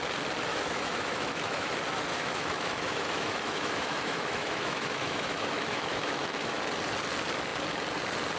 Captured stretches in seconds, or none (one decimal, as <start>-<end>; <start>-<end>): 0.0-0.5; 1.7-2.1; 6.6-8.4